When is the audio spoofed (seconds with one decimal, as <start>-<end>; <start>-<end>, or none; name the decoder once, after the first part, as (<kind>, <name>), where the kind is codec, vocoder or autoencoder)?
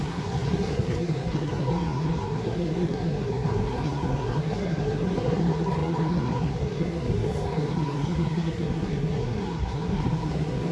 0.0-10.7 (codec, SNAC)